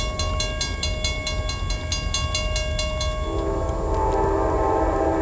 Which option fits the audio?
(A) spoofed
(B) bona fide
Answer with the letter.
B